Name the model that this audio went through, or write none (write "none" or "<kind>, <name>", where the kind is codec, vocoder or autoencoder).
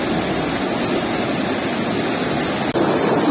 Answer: none